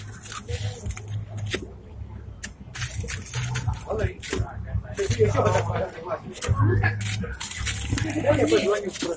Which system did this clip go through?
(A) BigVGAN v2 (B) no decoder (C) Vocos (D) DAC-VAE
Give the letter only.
B